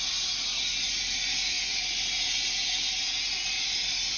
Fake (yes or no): no